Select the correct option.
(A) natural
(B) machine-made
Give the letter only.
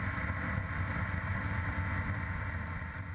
A